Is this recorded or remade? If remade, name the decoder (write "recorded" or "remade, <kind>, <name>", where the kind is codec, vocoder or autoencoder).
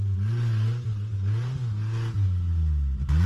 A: recorded